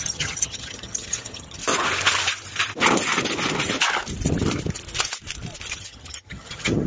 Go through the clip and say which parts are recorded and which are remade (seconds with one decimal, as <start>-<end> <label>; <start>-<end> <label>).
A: 0.0-1.6 remade; 1.6-5.7 recorded; 5.7-6.9 remade